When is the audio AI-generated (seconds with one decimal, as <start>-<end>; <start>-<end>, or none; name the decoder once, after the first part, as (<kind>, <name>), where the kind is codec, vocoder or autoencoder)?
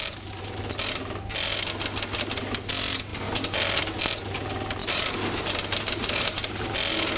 0.0-0.6 (vocoder, BigVGAN v2); 4.8-6.7